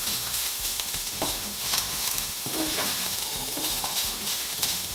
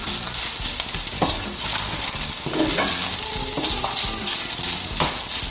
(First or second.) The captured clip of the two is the second